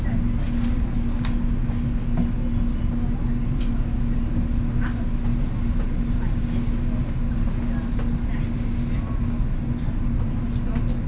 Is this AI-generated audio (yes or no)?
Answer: no